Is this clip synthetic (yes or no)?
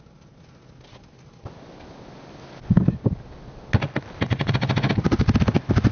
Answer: no